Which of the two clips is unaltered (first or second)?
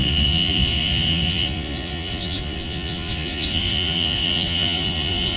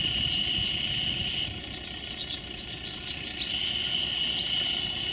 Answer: second